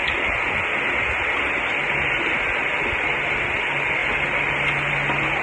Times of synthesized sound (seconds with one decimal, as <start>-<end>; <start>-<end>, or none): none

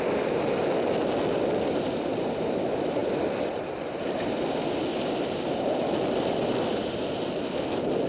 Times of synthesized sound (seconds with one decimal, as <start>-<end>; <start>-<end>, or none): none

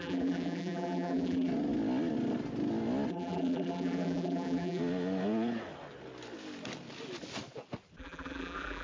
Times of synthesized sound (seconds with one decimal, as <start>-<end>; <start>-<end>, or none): 0.0-1.5; 3.1-4.8; 8.0-8.8